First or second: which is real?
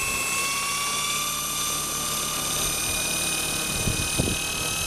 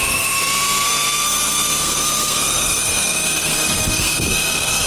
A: first